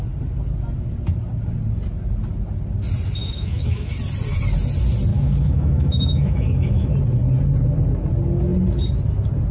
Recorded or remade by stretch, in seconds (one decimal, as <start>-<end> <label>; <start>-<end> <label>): 0.0-3.2 recorded; 3.2-3.9 remade; 3.9-5.1 recorded; 5.1-6.9 remade; 6.9-9.5 recorded